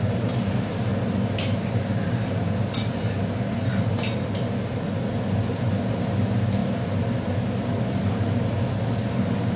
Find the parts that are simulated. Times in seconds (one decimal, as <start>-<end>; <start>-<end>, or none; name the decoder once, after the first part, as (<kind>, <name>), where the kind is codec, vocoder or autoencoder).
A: none